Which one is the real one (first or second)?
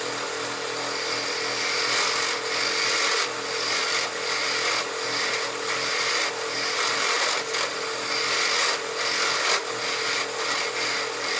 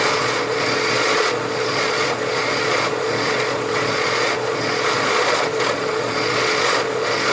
first